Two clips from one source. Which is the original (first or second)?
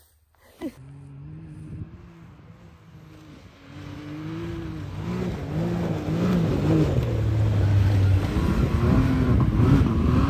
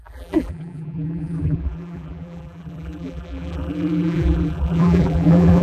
first